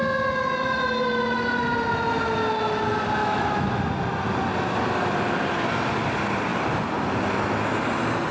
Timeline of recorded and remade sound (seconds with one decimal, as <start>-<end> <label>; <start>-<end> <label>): 0.0-3.2 recorded; 3.2-3.8 remade; 3.8-8.3 recorded